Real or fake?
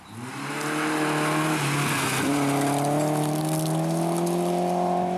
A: real